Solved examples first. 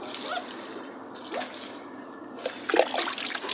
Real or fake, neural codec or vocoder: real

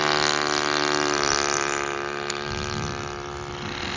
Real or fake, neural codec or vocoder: real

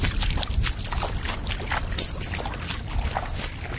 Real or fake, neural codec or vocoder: real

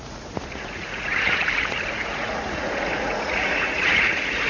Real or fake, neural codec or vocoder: fake, vocoder, Vocos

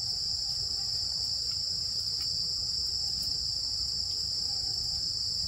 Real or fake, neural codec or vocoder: fake, vocoder, BigVGAN v2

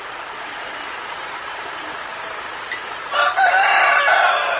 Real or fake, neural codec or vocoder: real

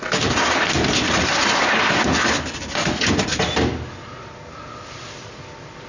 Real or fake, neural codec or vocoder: real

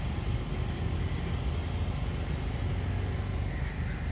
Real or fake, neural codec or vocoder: real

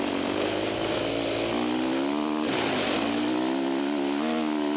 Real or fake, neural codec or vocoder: real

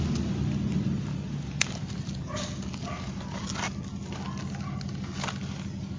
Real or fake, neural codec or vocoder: real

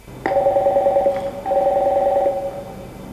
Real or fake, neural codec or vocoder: real